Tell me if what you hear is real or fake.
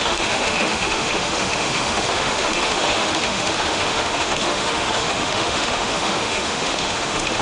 fake